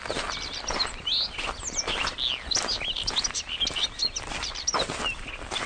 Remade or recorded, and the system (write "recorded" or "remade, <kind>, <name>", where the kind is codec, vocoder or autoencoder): recorded